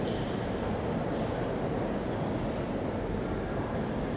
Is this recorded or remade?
recorded